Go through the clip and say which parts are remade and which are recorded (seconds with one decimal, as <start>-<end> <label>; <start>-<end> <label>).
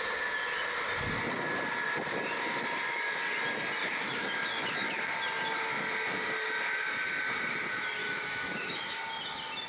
0.0-3.8 recorded; 3.8-5.0 remade; 5.0-8.0 recorded; 8.0-9.0 remade; 9.0-9.7 recorded